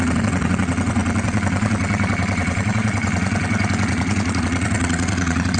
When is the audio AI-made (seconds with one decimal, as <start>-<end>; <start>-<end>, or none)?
0.0-5.6